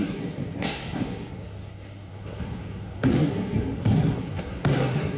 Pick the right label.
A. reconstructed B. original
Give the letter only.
A